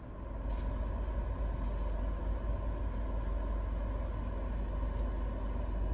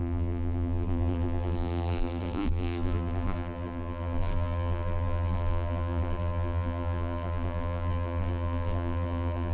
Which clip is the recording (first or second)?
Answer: first